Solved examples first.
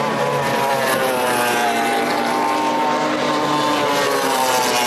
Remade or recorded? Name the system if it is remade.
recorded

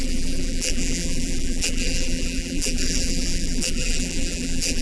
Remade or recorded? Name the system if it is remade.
remade, vocoder, BigVGAN v2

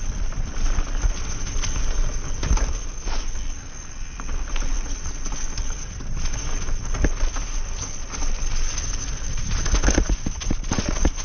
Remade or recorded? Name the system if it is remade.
recorded